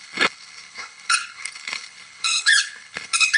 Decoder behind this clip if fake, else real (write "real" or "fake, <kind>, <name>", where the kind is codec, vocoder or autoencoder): fake, codec, HILCodec